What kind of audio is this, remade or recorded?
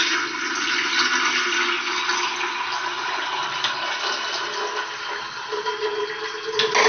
recorded